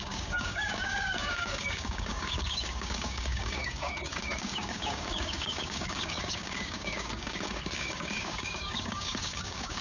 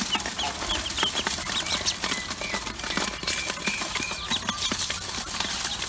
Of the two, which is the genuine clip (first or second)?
second